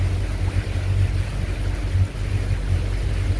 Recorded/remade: recorded